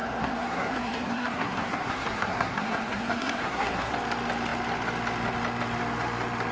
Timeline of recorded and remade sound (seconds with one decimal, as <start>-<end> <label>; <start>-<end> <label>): 0.0-3.9 remade; 3.9-6.5 recorded